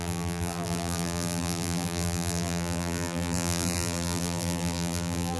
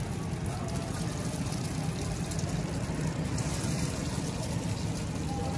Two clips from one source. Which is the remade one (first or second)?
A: first